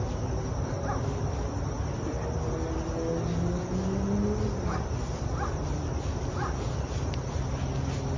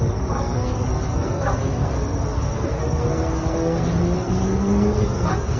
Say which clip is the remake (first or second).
second